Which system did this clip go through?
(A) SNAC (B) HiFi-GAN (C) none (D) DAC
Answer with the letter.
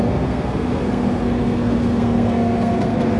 A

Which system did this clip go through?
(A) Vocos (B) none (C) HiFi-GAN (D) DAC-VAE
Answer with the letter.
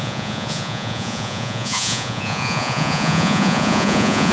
A